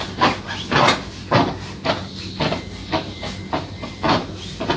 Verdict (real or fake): real